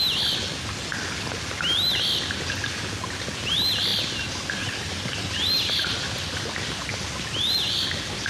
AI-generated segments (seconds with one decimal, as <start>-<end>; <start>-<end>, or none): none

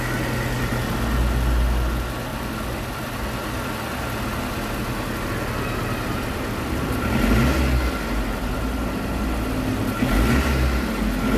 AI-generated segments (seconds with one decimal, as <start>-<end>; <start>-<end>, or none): 2.3-3.9

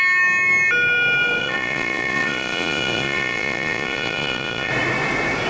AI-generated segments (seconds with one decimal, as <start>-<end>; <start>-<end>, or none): 1.4-4.7